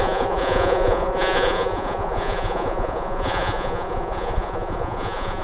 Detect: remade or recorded remade